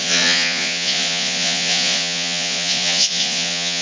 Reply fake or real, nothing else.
fake